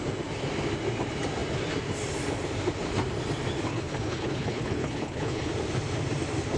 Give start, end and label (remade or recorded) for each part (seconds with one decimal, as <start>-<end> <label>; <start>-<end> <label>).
0.0-3.7 recorded; 3.7-5.5 remade; 5.5-6.6 recorded